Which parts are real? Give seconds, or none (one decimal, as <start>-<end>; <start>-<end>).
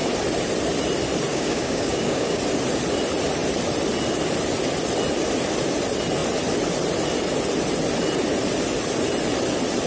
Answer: 0.0-1.3; 2.4-9.9